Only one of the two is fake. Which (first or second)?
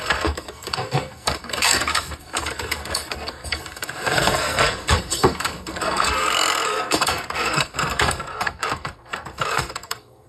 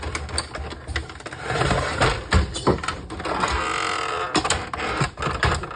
first